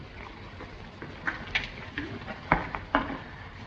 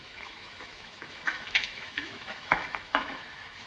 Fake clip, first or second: second